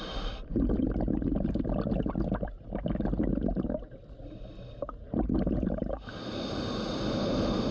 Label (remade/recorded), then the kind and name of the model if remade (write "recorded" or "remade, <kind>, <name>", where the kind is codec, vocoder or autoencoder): recorded